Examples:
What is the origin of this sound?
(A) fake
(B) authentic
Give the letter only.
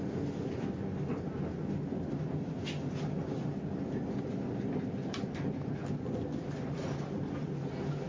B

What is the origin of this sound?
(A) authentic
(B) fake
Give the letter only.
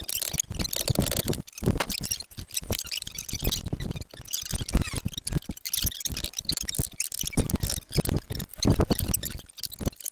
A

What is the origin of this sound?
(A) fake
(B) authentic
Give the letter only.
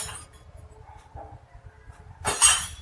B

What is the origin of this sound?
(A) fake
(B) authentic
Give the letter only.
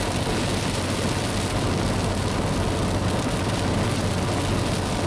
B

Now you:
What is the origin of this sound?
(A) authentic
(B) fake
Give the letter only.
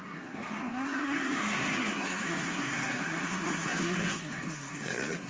B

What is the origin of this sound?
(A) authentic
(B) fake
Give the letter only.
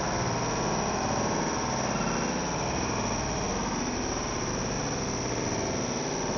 A